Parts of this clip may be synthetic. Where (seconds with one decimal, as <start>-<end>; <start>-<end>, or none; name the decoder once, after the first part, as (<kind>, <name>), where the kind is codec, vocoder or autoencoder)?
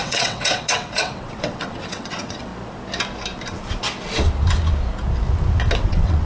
0.0-2.5 (vocoder, WaveNeXt); 5.8-6.3